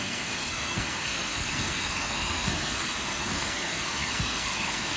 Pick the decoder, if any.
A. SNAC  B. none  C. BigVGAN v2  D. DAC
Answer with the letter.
A